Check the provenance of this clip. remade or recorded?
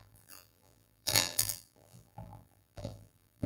remade